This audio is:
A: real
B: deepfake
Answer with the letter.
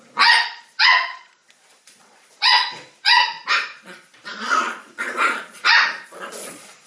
B